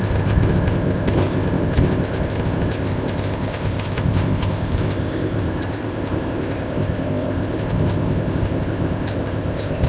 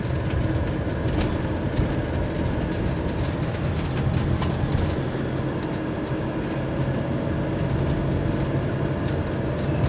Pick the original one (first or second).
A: second